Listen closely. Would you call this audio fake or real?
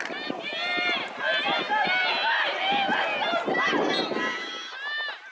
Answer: real